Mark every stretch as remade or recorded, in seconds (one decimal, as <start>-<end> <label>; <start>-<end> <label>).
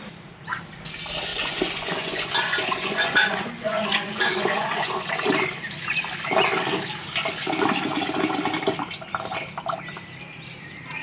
0.0-1.3 recorded; 1.3-5.1 remade; 5.1-11.0 recorded